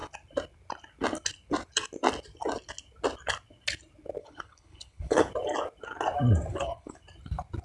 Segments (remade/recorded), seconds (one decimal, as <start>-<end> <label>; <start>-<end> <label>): 0.0-4.2 recorded; 4.2-5.3 remade; 5.3-6.5 recorded; 6.5-7.0 remade; 7.0-7.6 recorded